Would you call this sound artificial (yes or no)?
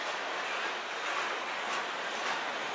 no